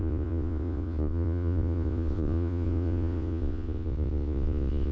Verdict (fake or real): fake